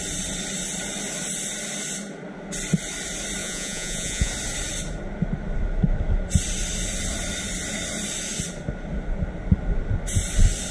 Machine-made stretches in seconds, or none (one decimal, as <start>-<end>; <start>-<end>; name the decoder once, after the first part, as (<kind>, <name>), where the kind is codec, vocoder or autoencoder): 3.4-4.3 (vocoder, Vocos)